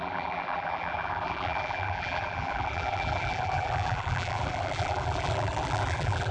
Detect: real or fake fake